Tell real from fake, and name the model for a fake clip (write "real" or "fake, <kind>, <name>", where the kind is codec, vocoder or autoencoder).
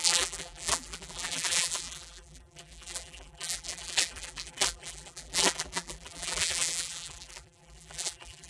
fake, vocoder, BigVGAN v2